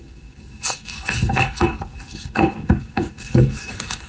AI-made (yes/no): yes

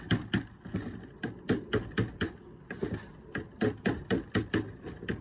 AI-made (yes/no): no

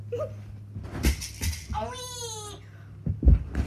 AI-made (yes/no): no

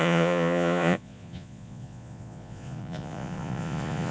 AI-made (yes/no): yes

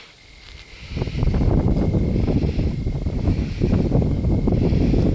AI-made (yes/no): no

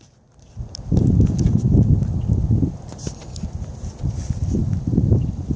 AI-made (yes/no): no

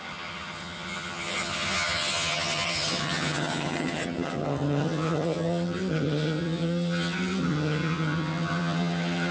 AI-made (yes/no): yes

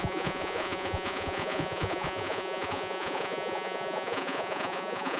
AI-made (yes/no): yes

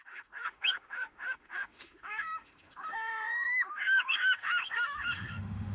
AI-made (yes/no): yes